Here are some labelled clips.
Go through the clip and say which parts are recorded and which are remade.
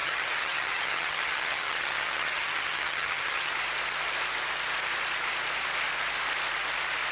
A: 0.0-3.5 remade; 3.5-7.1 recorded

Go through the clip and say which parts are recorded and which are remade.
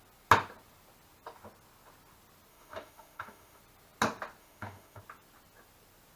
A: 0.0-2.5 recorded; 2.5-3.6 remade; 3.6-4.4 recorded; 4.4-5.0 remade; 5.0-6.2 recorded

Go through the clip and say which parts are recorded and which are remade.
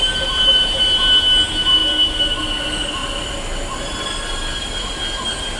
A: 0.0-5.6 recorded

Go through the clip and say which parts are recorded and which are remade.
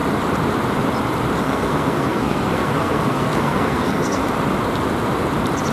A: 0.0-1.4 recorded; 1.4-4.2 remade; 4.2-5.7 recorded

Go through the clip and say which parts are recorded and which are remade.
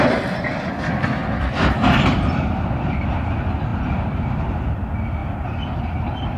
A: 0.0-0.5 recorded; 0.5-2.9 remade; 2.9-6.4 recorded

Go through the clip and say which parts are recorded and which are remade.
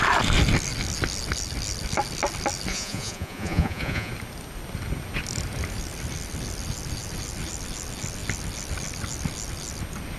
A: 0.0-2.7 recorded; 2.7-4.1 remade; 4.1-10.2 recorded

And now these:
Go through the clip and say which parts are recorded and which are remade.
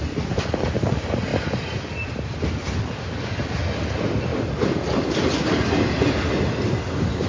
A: 0.0-7.3 recorded